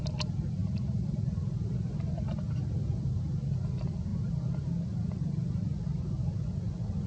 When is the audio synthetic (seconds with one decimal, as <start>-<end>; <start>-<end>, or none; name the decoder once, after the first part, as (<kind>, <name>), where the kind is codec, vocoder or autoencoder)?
none